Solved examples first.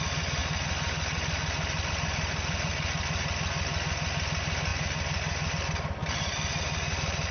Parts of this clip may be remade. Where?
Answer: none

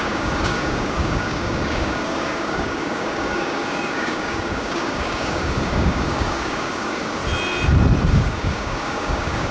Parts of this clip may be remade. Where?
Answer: 0.0-7.2 (codec, DAC); 8.1-9.5

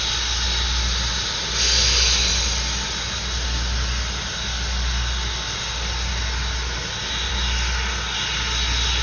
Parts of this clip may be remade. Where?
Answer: none

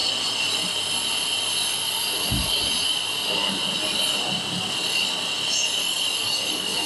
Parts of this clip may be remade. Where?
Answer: 5.8-6.9 (codec, DAC)

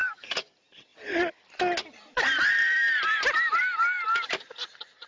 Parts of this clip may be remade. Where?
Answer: 0.0-0.5 (codec, DAC)

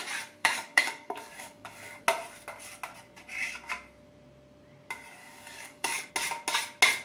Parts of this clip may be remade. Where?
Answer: 0.4-2.0 (codec, DAC); 5.2-6.1